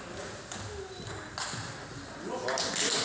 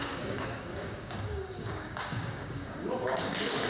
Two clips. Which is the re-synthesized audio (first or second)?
second